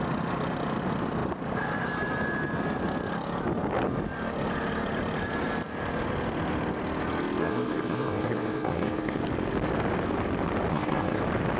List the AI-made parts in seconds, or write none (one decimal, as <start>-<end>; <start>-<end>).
7.4-9.2; 10.7-11.2